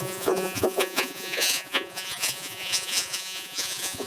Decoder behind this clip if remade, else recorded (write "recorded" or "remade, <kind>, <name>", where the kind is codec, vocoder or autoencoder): remade, vocoder, Vocos